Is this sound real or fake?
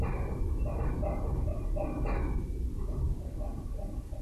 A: real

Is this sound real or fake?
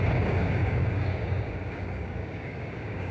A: fake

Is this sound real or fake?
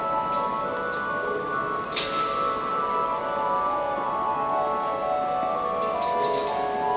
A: real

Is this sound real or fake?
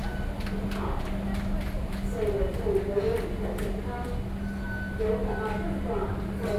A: real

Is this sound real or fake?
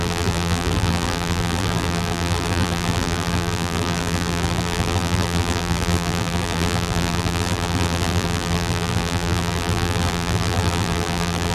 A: fake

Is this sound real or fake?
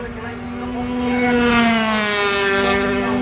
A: real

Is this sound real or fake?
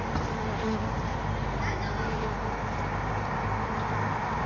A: real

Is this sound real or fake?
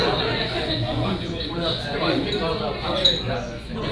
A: fake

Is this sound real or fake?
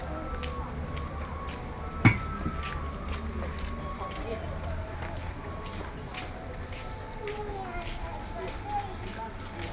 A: real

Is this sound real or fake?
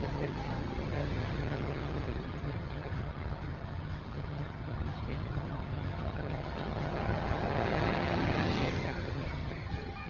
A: fake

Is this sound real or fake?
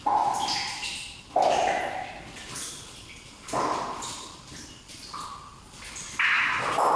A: real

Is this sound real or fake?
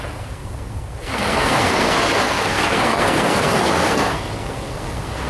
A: fake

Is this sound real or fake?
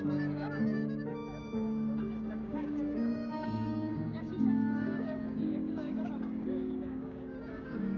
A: fake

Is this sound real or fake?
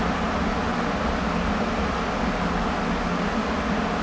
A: real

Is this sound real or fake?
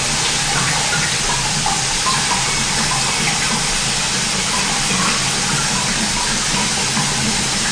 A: real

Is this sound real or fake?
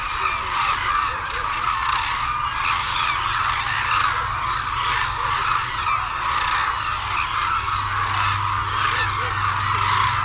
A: real